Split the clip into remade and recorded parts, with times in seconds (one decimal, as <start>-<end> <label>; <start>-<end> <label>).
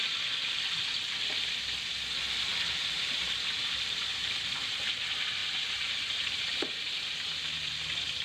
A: 0.0-2.5 recorded; 2.5-5.0 remade; 5.0-5.4 recorded; 5.4-7.0 remade; 7.0-8.2 recorded